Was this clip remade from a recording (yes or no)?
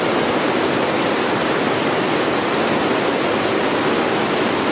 no